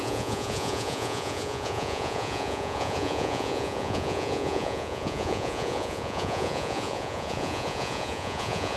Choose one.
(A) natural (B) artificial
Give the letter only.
B